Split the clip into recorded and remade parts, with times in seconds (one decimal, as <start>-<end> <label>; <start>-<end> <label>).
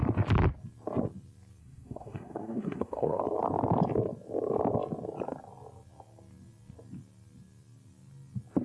0.0-1.6 recorded; 1.6-3.2 remade; 3.2-8.6 recorded